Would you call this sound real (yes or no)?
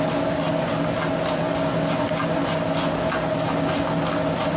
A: yes